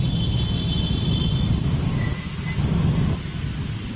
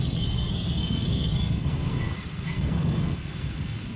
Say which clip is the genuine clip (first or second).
first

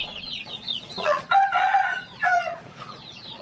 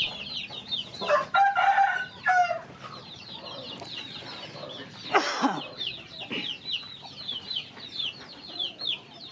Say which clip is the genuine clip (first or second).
second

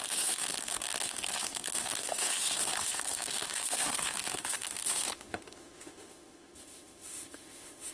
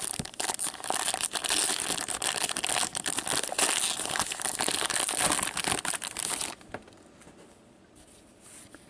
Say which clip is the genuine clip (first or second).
second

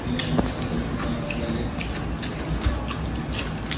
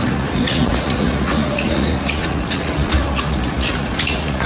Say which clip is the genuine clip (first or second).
first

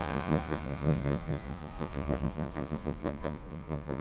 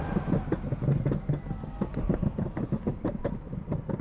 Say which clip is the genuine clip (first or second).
second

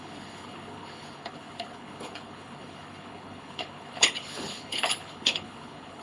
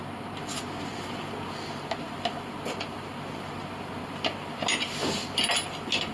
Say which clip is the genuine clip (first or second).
second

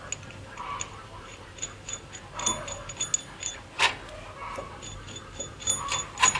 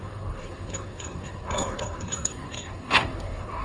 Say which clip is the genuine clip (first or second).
first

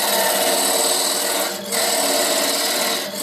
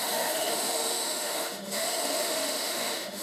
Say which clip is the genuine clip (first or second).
first